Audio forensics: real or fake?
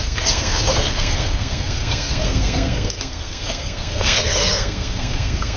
fake